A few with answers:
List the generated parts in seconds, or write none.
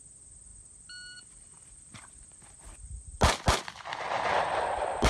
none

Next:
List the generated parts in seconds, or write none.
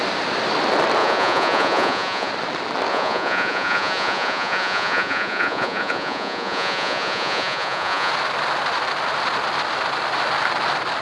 1.0-2.3 (vocoder, Vocos); 2.9-8.1